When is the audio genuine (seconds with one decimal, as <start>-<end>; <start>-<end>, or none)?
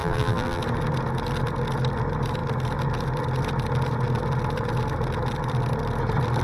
0.6-6.4